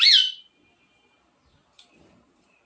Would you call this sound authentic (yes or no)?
yes